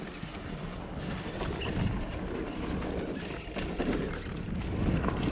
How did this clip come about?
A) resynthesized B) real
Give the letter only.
B